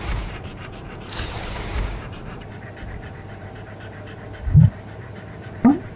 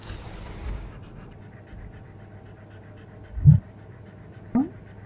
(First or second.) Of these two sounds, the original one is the second